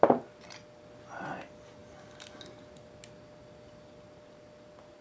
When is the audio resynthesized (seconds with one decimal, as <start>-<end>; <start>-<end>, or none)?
none